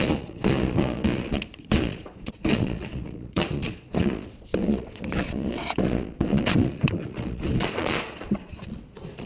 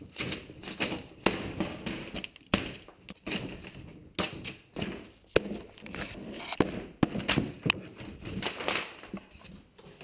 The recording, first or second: second